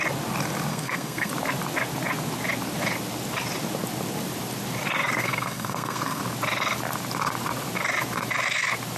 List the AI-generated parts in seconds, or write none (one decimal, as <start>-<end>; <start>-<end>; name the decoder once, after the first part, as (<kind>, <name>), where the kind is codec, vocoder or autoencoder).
0.7-1.3 (codec, SNAC); 5.2-6.2